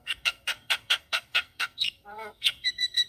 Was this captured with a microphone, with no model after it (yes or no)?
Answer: no